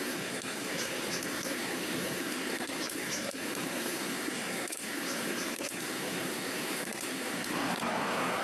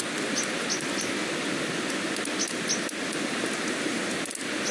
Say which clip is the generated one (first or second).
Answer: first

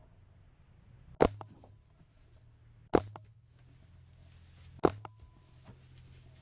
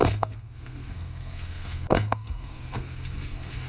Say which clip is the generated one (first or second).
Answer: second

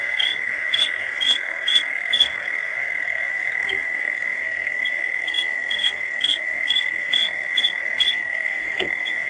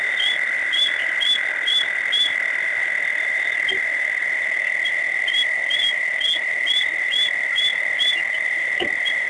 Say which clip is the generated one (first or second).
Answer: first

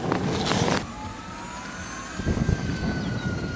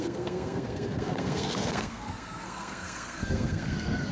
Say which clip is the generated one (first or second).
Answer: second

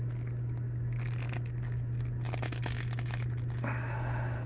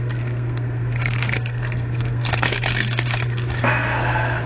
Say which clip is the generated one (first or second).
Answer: second